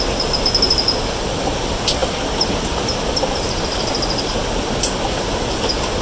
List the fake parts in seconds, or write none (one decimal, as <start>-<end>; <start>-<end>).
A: none